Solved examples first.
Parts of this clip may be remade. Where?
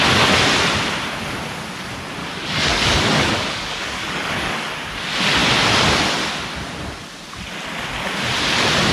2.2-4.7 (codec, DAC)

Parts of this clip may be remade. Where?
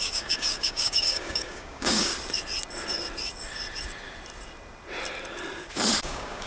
0.0-2.1 (codec, DAC); 6.0-6.5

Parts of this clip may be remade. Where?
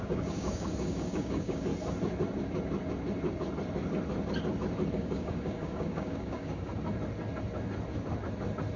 0.0-1.7 (codec, DAC); 4.9-6.7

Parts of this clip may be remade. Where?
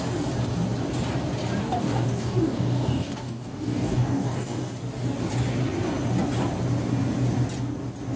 1.6-4.6 (codec, DAC)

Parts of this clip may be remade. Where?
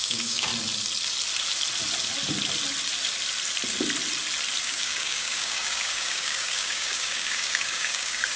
0.0-0.5 (codec, DAC); 4.6-8.4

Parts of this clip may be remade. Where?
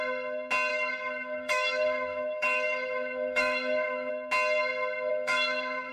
0.7-4.1 (codec, DAC); 5.1-5.9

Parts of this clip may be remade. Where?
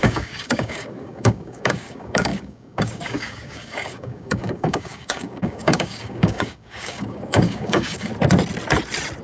0.0-8.1 (codec, DAC)